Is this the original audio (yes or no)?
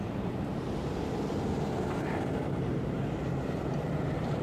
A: no